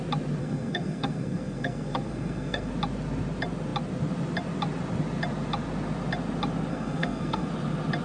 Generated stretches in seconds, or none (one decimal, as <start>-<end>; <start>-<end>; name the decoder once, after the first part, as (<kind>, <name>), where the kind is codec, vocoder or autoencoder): 0.4-2.7 (codec, SNAC); 6.7-7.5